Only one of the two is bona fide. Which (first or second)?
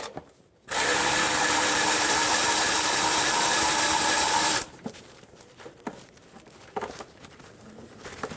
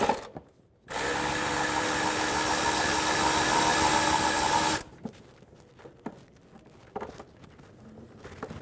second